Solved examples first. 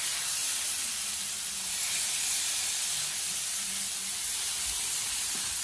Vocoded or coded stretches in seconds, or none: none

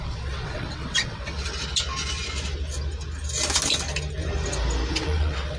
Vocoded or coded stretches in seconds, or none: 0.0-1.5 (vocoder, WaveNeXt); 4.9-5.6